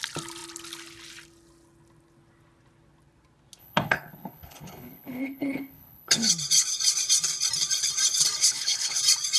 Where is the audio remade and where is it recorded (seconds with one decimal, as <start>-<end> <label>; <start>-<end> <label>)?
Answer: 0.0-3.6 recorded; 3.6-6.3 remade; 6.3-8.4 recorded; 8.4-9.0 remade; 9.0-9.4 recorded